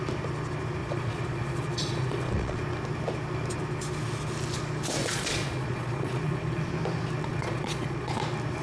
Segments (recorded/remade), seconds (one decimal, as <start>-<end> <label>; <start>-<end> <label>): 0.0-0.8 recorded; 0.8-2.6 remade; 2.6-5.0 recorded; 5.0-6.7 remade; 6.7-7.3 recorded; 7.3-8.1 remade; 8.1-8.6 recorded